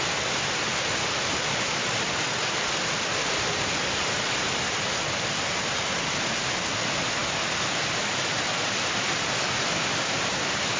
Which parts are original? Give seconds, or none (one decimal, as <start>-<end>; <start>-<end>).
0.0-10.8